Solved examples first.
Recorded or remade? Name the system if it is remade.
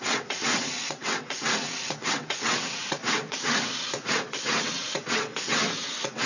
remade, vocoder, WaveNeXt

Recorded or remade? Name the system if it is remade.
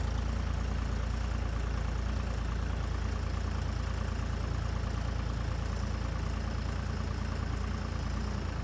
recorded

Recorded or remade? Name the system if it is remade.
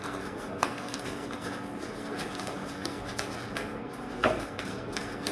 remade, codec, SNAC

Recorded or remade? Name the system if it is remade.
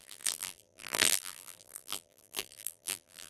remade, vocoder, BigVGAN v2